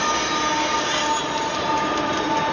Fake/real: real